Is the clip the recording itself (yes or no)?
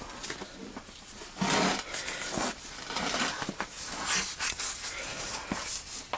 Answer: yes